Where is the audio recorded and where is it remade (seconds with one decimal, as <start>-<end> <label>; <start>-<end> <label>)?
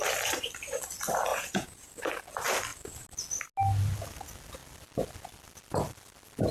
0.0-1.3 recorded; 1.3-1.9 remade; 1.9-6.5 recorded